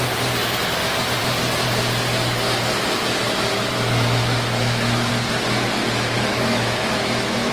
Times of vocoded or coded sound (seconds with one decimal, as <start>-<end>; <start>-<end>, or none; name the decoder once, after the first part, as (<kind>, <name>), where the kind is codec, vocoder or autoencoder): 3.5-5.1 (autoencoder, DAC-VAE); 6.3-7.5